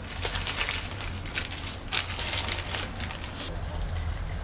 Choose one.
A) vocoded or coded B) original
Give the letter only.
B